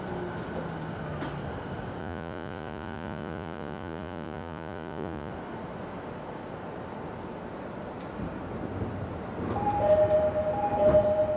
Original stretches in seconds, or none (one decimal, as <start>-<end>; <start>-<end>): 0.0-2.0; 5.3-11.4